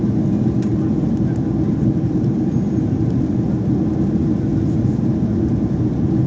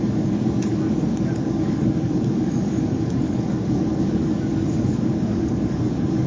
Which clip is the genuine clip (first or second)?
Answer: first